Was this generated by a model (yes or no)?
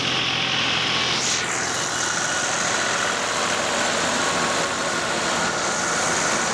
no